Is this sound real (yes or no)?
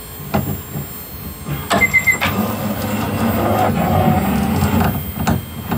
yes